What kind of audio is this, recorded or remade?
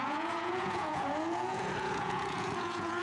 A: remade